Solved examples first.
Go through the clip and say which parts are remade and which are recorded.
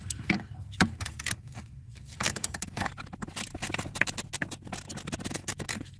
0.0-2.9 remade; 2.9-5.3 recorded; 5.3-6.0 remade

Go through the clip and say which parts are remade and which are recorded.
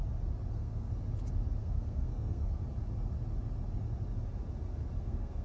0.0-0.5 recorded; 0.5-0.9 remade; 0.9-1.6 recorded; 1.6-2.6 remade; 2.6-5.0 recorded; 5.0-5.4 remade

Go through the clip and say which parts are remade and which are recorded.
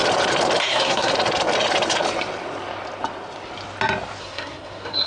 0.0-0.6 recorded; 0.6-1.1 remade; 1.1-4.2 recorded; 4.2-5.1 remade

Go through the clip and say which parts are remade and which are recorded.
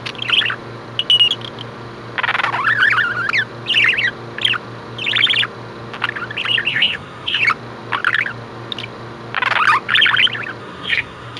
0.0-6.7 recorded; 6.7-7.4 remade; 7.4-10.6 recorded; 10.6-11.4 remade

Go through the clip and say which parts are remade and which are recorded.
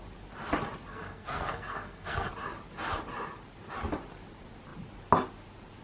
0.0-0.9 recorded; 0.9-2.3 remade; 2.3-5.8 recorded